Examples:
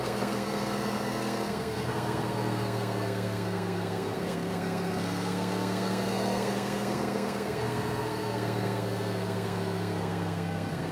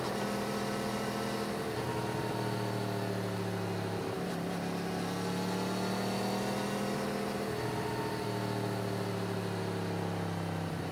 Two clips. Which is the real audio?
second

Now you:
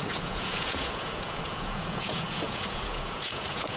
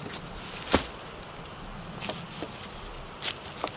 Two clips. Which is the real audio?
second